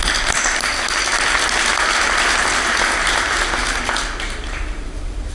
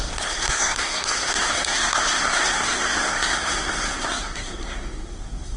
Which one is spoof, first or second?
second